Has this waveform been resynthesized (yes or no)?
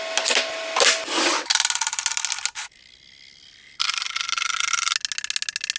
no